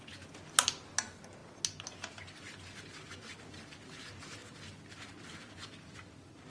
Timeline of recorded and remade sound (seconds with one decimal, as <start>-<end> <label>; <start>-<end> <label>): 0.0-6.5 recorded